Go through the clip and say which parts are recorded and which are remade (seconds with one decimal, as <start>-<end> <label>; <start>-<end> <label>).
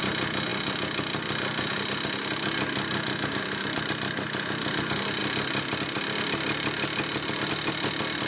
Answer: 0.0-8.3 recorded